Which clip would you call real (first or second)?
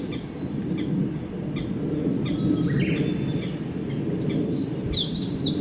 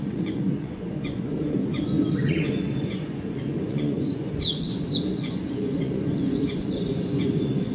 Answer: first